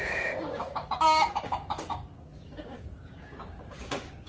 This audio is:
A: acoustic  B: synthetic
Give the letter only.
B